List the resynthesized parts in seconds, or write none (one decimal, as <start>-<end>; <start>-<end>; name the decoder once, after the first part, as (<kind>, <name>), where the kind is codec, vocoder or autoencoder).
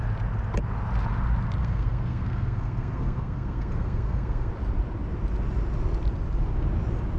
1.6-4.5 (codec, SNAC)